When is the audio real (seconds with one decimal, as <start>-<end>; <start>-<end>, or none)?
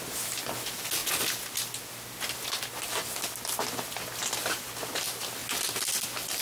0.0-6.4